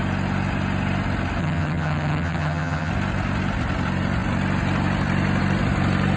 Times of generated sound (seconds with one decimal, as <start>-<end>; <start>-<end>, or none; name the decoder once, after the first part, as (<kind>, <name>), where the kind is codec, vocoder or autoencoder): 1.4-2.9 (vocoder, HiFi-GAN)